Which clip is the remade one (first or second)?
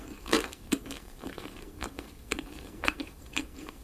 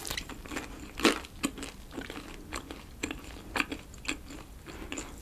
first